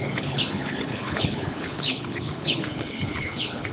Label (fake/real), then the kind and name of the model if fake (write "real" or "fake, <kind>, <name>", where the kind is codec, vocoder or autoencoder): fake, codec, HILCodec